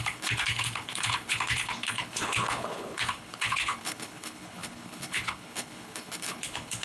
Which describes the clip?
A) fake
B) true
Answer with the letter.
A